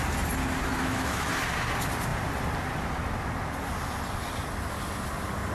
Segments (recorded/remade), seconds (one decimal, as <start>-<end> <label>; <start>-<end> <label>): 0.0-0.7 recorded; 0.7-1.3 remade; 1.3-5.5 recorded